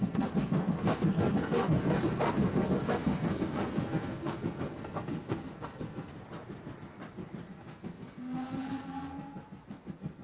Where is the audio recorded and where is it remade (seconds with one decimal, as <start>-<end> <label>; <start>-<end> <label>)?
0.0-6.1 remade; 6.1-7.5 recorded; 7.5-10.2 remade